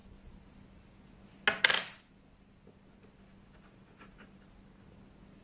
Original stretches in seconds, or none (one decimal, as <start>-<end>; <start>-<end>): 0.0-5.4